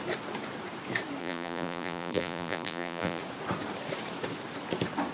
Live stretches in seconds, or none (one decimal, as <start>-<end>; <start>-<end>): 0.0-1.2; 3.2-5.1